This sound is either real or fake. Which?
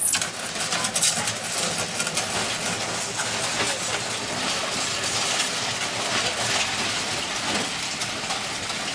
real